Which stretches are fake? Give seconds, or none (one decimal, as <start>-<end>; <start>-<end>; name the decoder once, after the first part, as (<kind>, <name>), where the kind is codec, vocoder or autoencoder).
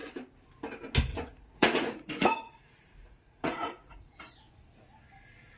1.1-4.5 (vocoder, Vocos)